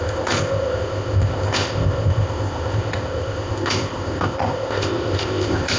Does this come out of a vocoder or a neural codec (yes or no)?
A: yes